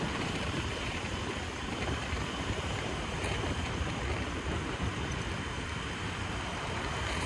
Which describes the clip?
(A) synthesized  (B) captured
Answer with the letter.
A